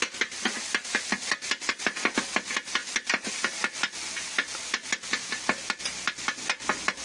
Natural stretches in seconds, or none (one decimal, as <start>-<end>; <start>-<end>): 0.0-7.0